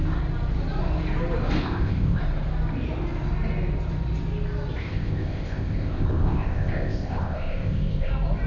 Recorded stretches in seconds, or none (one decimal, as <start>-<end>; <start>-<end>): 0.0-1.6; 2.2-4.8; 8.1-8.5